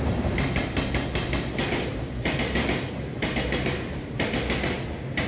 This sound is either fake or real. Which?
real